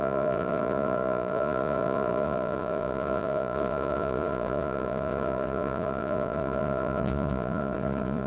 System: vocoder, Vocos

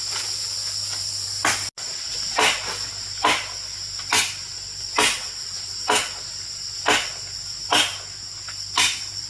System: none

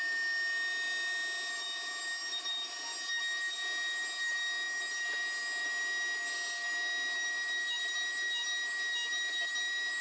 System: none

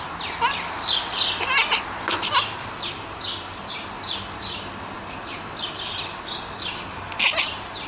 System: none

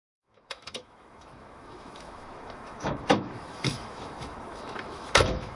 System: autoencoder, DAC-VAE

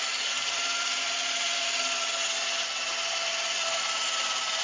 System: none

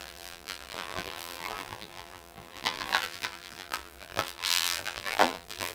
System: vocoder, BigVGAN v2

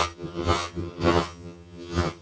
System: vocoder, HiFi-GAN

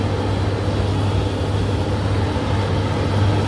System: none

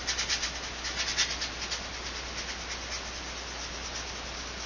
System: none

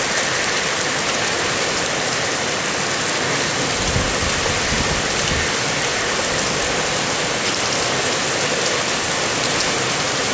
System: none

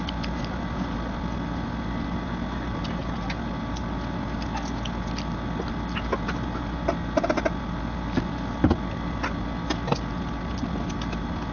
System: none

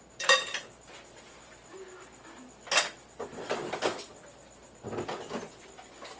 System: none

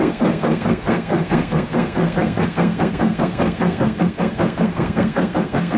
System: codec, SNAC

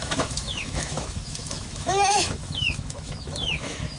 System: autoencoder, DAC-VAE